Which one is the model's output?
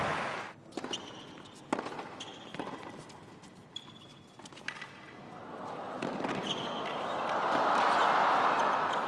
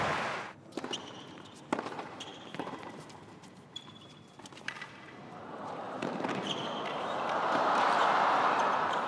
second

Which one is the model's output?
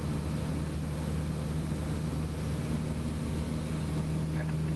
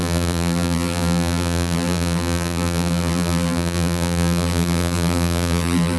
second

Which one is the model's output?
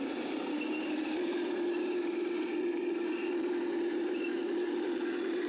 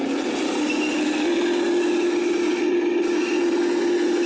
first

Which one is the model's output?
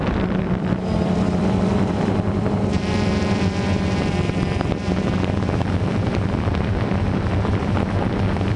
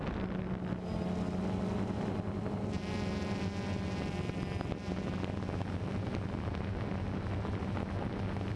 first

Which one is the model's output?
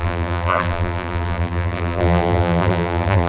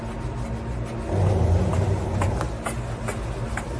first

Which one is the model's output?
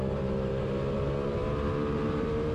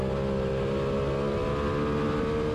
first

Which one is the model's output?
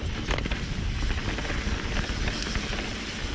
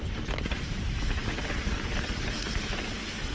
second